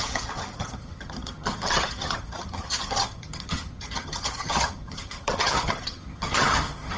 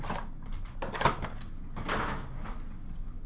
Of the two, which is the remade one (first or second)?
first